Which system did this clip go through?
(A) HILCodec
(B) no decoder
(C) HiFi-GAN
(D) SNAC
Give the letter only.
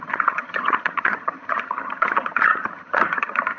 C